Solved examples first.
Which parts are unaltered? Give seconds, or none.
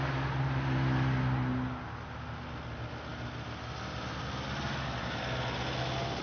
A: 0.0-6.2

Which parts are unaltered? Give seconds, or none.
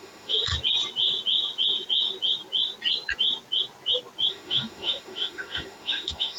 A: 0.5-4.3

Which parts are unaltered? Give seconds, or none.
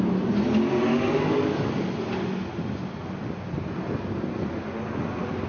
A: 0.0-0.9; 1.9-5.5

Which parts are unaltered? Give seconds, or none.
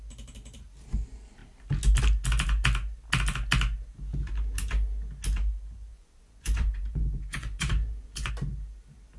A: 0.0-5.9; 8.3-9.2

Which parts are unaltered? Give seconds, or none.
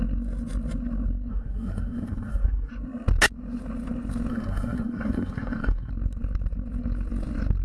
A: 0.0-1.3; 2.7-4.3; 5.9-7.6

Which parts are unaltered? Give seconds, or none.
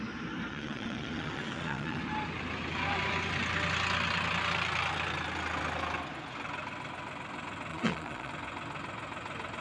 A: 0.0-0.5; 2.0-7.7; 8.3-9.6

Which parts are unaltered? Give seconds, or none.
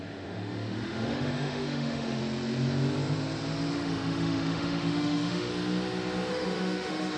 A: 2.2-3.7; 5.5-6.3